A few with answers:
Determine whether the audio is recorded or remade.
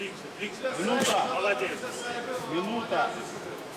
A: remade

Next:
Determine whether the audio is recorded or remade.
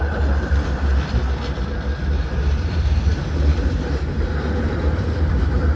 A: remade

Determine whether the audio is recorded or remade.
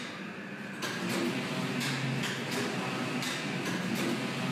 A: recorded